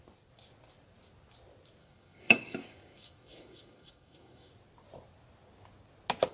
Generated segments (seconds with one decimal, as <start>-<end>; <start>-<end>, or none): 1.8-4.5